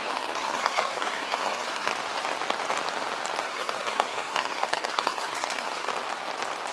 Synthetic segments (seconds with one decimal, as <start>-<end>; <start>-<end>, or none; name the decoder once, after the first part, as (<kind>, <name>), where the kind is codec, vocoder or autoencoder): 0.0-1.9 (codec, SNAC); 3.4-5.9